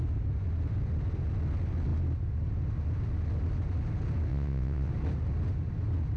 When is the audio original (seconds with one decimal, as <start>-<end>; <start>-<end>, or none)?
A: 0.0-4.3; 4.9-6.2